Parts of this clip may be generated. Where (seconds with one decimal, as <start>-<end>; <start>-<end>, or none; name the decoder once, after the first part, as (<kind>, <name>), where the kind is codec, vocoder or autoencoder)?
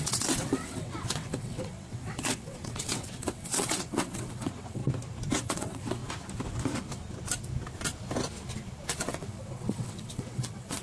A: 0.0-4.8 (vocoder, WaveNeXt); 5.4-6.0; 8.9-10.8